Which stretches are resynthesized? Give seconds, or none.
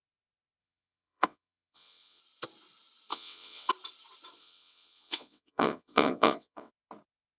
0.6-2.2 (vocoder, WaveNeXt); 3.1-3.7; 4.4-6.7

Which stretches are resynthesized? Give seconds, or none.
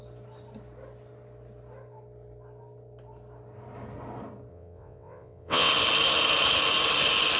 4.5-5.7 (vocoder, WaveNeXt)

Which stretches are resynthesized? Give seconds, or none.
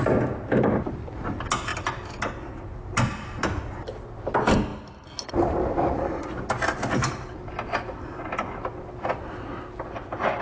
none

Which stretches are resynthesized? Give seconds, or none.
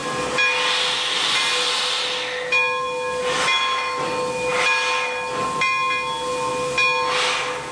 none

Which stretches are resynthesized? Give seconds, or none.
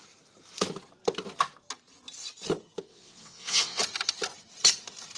2.9-3.8 (vocoder, WaveNeXt)